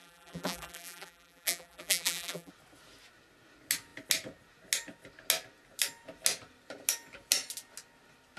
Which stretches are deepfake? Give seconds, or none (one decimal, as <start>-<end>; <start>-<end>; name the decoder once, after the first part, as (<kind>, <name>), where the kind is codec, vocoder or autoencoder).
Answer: 0.0-2.5 (vocoder, BigVGAN v2)